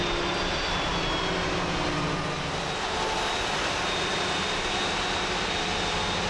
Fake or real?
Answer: real